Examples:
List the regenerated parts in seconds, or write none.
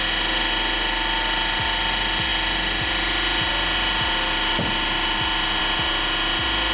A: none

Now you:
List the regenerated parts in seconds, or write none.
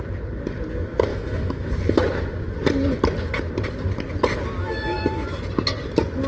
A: 1.1-1.7 (autoencoder, DAC-VAE); 4.6-5.4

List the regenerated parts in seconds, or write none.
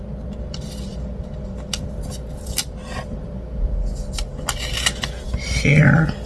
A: none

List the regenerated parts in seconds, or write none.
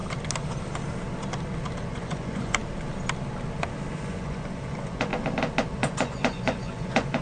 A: 1.8-2.6 (vocoder, Vocos); 3.9-5.1; 5.7-7.2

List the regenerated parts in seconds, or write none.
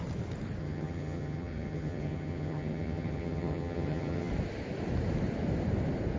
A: 0.6-4.3 (vocoder, HiFi-GAN)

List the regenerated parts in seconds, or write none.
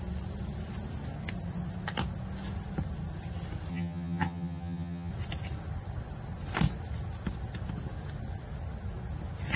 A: 3.7-5.1 (vocoder, HiFi-GAN)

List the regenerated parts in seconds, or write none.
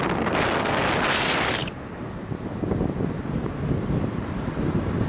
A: none